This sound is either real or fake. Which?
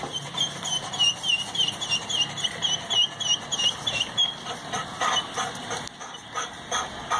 real